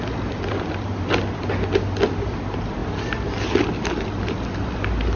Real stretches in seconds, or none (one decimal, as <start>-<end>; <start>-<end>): 0.0-5.2